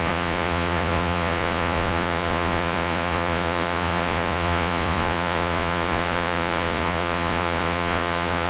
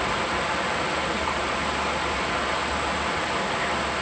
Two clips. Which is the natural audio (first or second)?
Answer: second